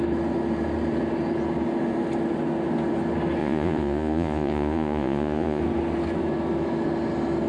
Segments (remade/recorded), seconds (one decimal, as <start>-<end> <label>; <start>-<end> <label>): 0.0-3.4 recorded; 3.4-5.6 remade; 5.6-7.5 recorded